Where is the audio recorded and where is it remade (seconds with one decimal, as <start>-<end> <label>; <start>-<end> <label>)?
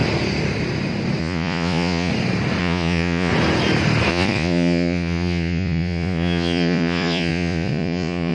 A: 0.0-1.2 recorded; 1.2-2.1 remade; 2.1-2.6 recorded; 2.6-3.3 remade; 3.3-4.1 recorded; 4.1-8.3 remade